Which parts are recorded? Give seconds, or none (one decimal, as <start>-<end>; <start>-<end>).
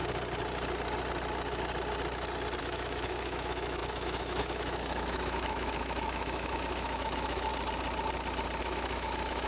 0.0-2.6; 7.5-8.6